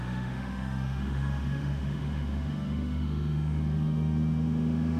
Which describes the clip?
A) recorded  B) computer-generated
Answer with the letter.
B